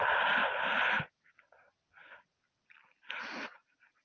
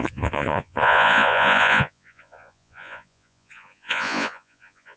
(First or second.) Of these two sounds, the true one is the first